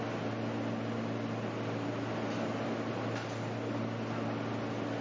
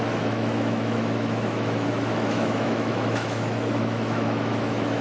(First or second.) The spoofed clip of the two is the second